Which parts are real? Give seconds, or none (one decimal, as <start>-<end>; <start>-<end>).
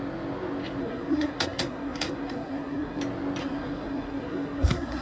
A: 0.0-0.8; 3.0-3.4